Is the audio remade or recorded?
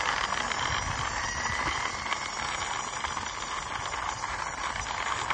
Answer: recorded